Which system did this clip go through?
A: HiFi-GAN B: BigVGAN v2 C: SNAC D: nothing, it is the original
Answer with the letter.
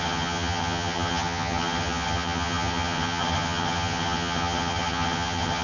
A